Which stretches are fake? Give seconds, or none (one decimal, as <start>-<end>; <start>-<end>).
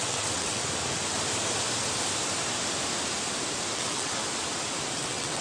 0.0-0.6; 3.7-4.2; 5.0-5.4